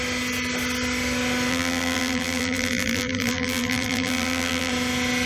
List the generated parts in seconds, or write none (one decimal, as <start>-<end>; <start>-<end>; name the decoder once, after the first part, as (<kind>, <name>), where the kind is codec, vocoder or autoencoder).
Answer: 1.5-4.7 (vocoder, BigVGAN v2)